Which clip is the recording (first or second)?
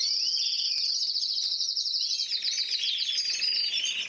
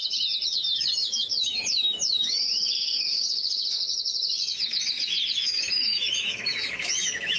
first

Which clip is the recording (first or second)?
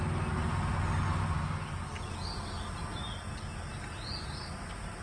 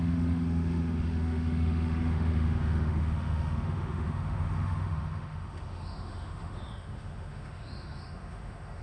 first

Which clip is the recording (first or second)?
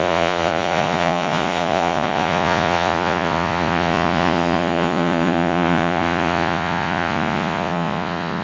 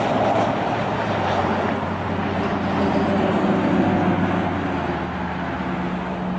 second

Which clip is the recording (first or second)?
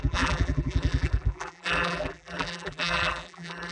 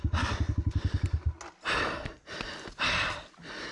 second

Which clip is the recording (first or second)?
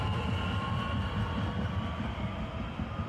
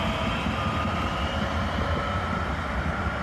second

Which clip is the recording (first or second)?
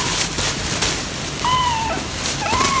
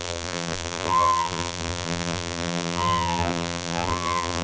first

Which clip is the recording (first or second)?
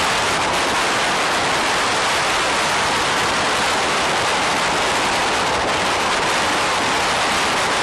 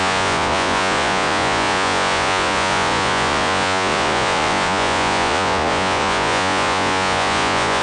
first